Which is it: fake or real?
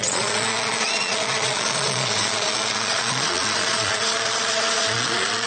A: fake